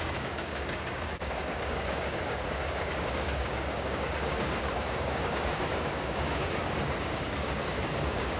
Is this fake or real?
fake